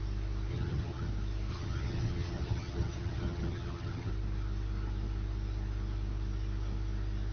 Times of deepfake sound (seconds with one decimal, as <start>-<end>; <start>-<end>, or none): 0.5-1.1; 1.5-4.1